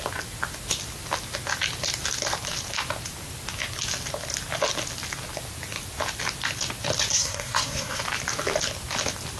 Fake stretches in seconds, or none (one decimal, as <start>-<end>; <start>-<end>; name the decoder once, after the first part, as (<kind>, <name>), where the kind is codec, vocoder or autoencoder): 7.1-8.0 (codec, SNAC)